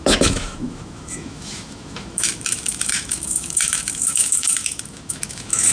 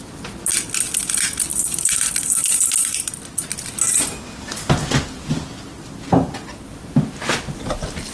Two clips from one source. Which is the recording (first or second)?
second